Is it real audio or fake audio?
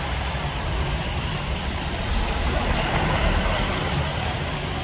fake